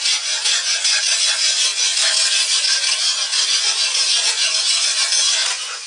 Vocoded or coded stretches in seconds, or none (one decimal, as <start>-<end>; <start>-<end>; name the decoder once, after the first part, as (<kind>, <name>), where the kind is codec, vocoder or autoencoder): 0.0-5.9 (vocoder, Vocos)